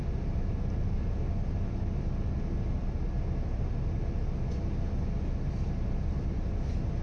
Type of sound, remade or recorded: recorded